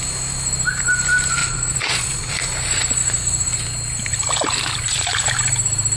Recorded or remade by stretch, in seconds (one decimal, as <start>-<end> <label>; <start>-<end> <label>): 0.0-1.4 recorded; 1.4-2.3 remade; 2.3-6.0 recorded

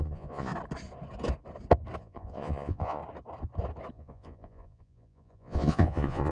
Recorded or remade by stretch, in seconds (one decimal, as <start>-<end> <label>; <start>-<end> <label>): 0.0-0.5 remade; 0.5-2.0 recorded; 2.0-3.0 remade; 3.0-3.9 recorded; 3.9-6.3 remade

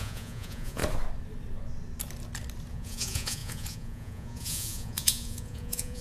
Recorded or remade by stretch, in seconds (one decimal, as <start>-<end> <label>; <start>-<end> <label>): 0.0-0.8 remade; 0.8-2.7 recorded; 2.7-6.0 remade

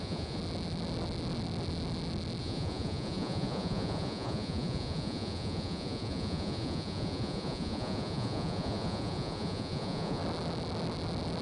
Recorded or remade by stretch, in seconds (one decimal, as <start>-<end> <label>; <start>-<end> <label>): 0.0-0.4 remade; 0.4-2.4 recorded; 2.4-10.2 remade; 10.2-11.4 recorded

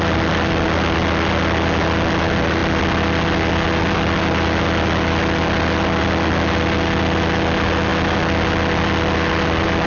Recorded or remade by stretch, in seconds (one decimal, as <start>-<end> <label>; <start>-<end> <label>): 0.0-9.9 recorded

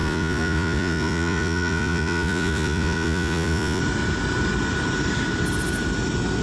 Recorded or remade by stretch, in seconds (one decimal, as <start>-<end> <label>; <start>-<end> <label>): 0.0-3.8 remade; 3.8-6.4 recorded